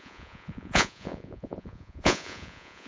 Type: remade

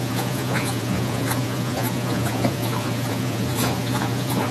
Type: remade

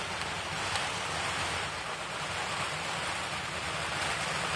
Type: recorded